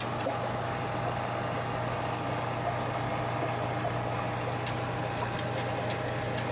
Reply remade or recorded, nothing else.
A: recorded